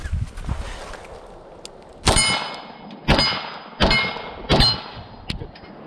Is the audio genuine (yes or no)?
yes